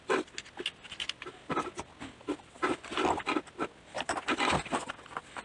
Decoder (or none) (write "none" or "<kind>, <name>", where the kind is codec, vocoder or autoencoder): none